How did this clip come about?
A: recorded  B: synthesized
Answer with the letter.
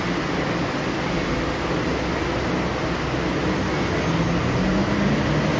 A